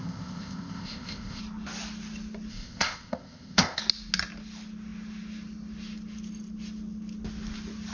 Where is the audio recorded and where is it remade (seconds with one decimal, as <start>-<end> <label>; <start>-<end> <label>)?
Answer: 0.0-1.4 remade; 1.4-2.5 recorded; 2.5-3.8 remade; 3.8-7.9 recorded